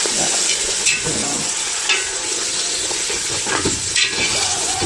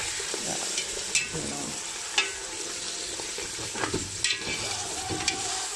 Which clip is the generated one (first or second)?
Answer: first